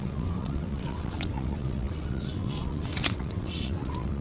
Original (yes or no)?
no